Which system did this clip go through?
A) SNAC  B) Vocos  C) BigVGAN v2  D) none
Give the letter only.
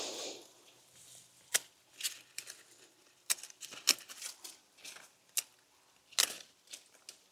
D